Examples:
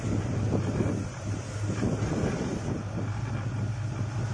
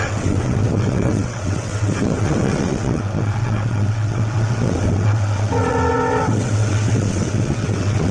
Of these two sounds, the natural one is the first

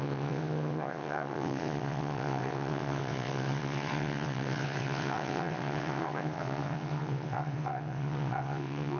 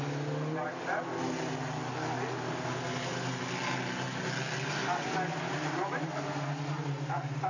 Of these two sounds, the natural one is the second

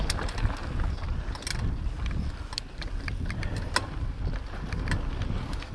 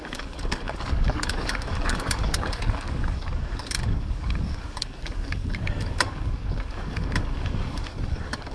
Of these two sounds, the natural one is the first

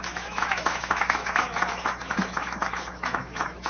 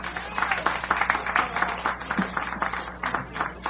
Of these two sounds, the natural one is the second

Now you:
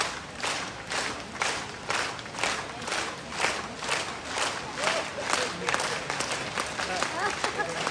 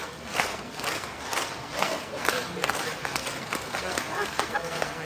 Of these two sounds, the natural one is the first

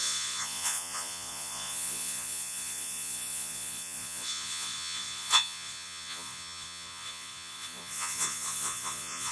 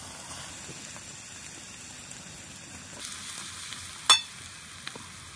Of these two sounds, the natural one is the second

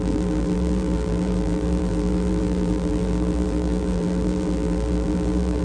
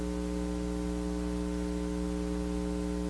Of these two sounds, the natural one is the second